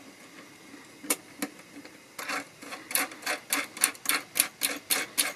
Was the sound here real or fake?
real